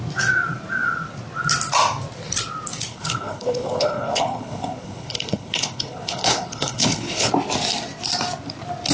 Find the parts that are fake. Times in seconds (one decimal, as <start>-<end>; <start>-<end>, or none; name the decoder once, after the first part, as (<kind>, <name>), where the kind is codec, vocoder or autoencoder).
2.9-7.3 (codec, HILCodec)